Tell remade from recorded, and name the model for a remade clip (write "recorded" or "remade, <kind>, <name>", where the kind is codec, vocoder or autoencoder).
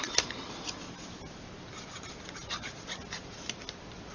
recorded